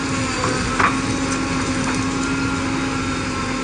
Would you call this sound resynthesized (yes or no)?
no